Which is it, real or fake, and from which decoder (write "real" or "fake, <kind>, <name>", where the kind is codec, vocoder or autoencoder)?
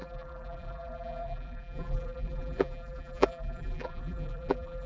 fake, vocoder, BigVGAN v2